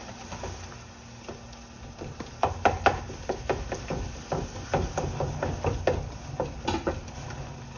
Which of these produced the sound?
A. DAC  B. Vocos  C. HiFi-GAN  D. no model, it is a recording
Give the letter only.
D